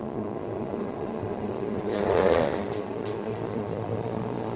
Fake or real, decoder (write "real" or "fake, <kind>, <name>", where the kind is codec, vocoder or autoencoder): fake, vocoder, Vocos